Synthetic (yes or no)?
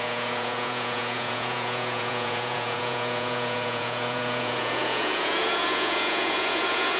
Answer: yes